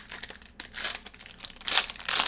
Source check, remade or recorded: recorded